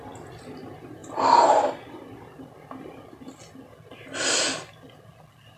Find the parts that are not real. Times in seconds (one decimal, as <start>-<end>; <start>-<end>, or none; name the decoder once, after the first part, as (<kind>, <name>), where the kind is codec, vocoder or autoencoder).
none